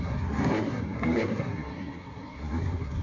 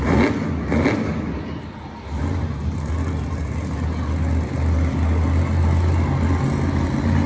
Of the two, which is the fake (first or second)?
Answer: first